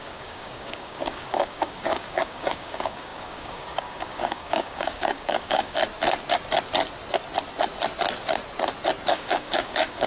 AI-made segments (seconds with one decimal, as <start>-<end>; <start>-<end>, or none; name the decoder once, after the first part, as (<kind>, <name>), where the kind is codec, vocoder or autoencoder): 0.0-5.8 (codec, DAC); 9.1-10.1